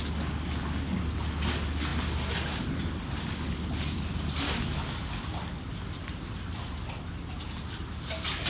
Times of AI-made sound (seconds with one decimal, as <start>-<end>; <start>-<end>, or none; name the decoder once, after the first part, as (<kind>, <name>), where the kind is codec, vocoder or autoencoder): none